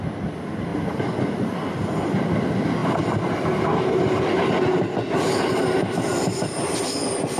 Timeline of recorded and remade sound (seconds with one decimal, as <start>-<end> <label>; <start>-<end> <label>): 0.0-7.4 recorded